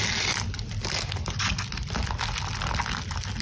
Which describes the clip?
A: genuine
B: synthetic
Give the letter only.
A